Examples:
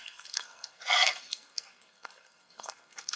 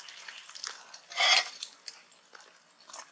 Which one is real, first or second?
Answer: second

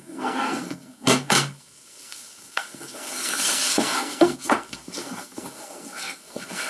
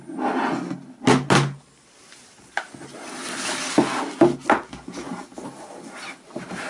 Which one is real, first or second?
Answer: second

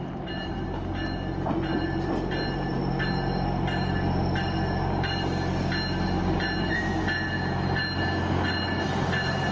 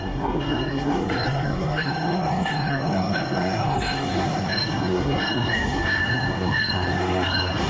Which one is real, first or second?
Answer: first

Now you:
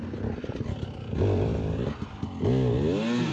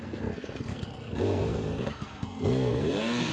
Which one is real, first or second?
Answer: first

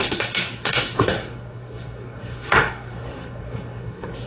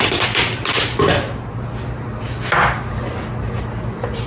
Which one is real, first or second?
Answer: second